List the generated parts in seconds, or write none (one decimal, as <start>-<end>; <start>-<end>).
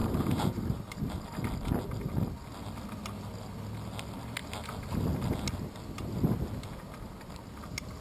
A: 0.0-0.8